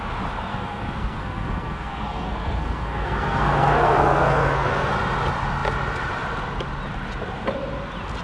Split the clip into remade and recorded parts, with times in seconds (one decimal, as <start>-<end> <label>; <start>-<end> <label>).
0.0-0.5 recorded; 0.5-4.9 remade; 4.9-8.2 recorded